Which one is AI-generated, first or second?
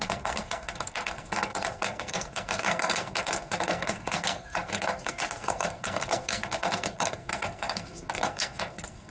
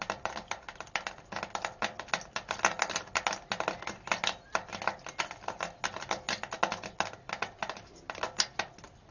first